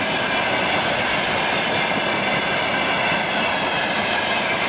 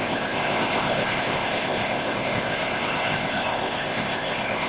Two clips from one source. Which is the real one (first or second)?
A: first